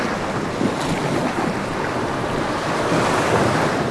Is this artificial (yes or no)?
no